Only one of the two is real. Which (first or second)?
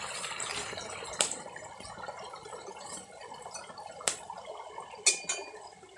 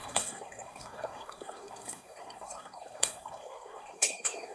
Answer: first